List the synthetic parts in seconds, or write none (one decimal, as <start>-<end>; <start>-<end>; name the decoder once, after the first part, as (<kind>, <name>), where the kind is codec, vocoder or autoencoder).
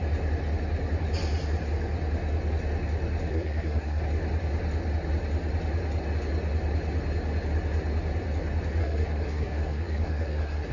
3.3-4.0 (codec, SNAC); 8.8-10.7